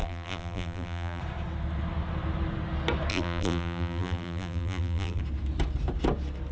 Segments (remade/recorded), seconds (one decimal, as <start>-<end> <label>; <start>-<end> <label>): 0.0-1.2 remade; 1.2-3.1 recorded; 3.1-5.2 remade; 5.2-6.5 recorded